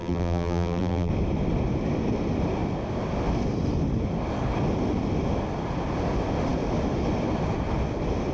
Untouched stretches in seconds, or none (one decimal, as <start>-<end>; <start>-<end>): 1.1-8.3